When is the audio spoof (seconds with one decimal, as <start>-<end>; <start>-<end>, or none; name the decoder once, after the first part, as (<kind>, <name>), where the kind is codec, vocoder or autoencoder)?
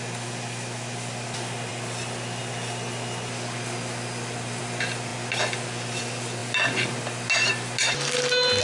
none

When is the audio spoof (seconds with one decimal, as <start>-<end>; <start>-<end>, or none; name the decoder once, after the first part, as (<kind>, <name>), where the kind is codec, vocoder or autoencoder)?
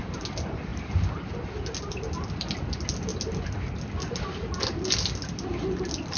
none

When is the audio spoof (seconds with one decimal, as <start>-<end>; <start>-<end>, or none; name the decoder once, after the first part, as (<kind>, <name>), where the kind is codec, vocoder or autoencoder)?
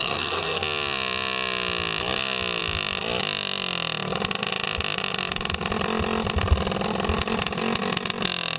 0.0-0.6 (codec, SNAC)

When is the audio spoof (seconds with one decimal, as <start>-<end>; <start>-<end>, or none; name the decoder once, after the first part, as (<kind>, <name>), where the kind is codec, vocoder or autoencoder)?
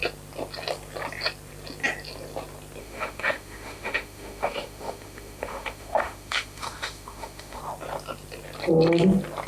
2.8-7.6 (autoencoder, DAC-VAE)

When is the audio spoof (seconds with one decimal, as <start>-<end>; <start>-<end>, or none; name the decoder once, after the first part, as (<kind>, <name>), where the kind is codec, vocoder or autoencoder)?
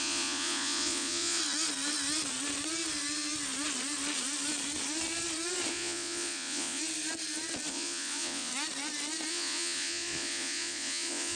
0.0-1.4 (vocoder, Vocos); 5.7-6.8; 7.7-8.5; 9.3-11.4